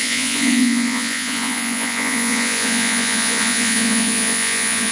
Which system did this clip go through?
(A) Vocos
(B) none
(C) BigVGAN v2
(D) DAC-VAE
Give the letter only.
A